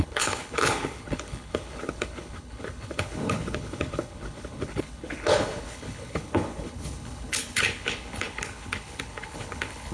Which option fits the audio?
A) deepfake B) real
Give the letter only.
A